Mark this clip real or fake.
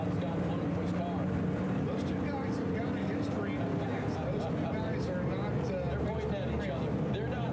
real